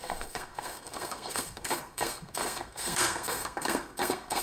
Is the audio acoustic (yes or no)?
no